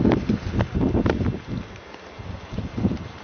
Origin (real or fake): real